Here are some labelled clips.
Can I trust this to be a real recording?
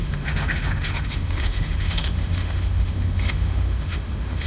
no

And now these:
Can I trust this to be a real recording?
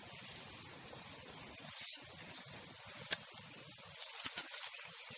yes